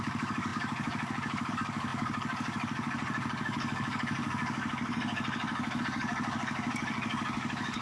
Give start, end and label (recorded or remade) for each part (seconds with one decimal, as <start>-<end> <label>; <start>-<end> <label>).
0.0-7.8 remade